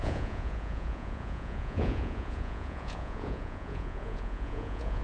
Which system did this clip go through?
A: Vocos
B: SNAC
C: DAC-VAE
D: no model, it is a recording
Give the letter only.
A